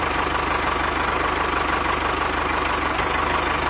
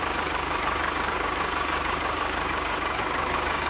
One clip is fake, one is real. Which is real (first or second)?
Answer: first